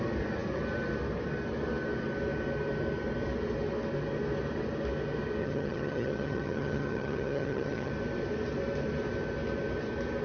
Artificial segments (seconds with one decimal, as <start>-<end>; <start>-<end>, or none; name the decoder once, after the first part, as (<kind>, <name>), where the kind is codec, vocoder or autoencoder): 5.4-7.9 (vocoder, HiFi-GAN)